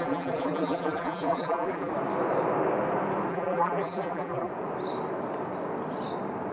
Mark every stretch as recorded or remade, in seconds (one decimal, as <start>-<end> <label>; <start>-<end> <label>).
0.0-1.9 remade; 1.9-3.3 recorded; 3.3-4.5 remade; 4.5-6.5 recorded

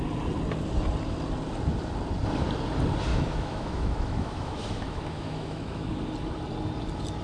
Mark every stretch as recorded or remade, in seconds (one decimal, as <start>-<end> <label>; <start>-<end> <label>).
0.0-3.1 recorded; 3.1-5.9 remade; 5.9-7.2 recorded

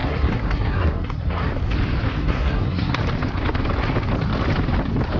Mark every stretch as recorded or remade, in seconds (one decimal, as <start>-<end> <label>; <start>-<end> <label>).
0.0-1.5 remade; 1.5-2.2 recorded; 2.2-3.0 remade; 3.0-5.2 recorded

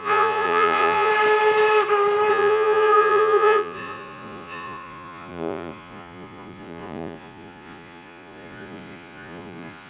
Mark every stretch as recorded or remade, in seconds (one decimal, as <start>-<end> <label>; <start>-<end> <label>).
0.0-1.1 remade; 1.1-2.3 recorded; 2.3-9.9 remade